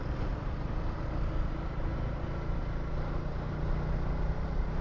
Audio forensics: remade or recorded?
recorded